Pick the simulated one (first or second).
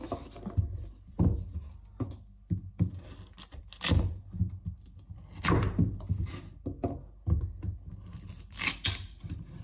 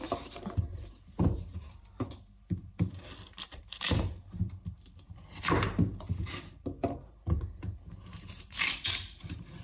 second